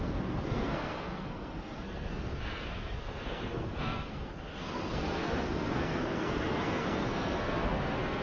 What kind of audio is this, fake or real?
fake